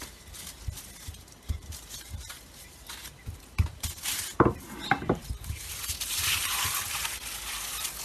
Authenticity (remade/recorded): recorded